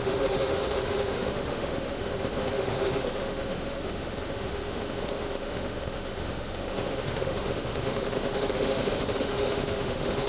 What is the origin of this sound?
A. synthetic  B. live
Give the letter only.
A